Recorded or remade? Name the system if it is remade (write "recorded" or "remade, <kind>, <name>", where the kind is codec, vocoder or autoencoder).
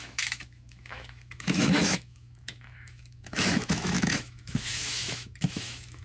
remade, autoencoder, DAC-VAE